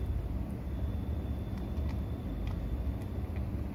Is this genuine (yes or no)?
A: yes